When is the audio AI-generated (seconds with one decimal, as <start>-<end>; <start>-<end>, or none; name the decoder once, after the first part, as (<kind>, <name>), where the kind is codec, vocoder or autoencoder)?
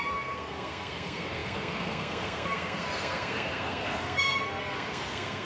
0.0-5.4 (codec, SNAC)